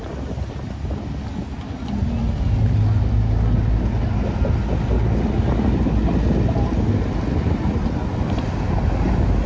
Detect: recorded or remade recorded